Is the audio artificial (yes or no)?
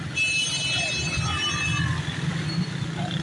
no